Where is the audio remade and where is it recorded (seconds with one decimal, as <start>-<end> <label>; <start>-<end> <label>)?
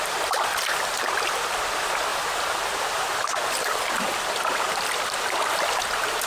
0.0-2.1 recorded; 2.1-5.3 remade; 5.3-6.3 recorded